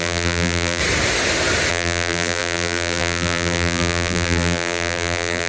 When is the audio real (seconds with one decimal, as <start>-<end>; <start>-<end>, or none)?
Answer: 0.8-1.7